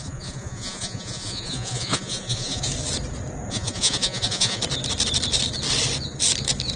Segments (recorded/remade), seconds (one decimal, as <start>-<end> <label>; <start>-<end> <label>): 0.0-2.7 remade; 2.7-3.5 recorded; 3.5-4.6 remade; 4.6-6.8 recorded